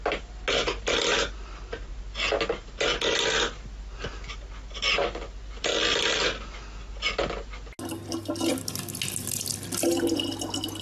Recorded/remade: recorded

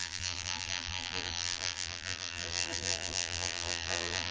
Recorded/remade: remade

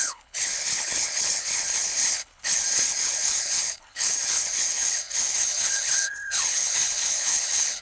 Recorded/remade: remade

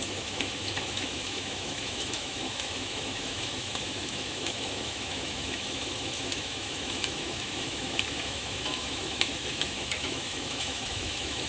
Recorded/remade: remade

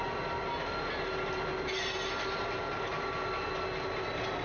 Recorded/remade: recorded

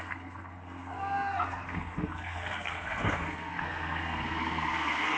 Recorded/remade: remade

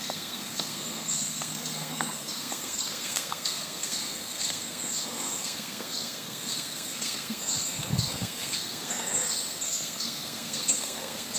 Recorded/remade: remade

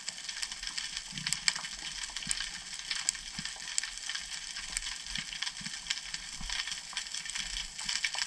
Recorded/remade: recorded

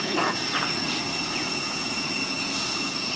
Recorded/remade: remade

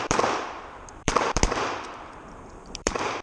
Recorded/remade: remade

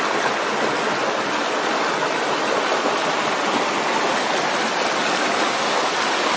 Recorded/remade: recorded